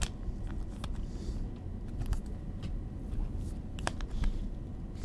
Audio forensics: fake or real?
real